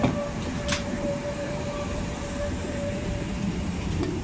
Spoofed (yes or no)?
yes